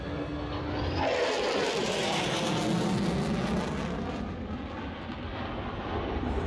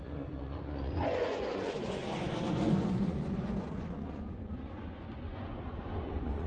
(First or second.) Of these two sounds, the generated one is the second